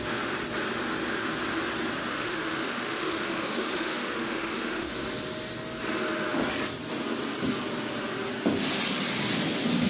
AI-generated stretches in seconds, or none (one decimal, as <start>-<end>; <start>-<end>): 2.1-4.9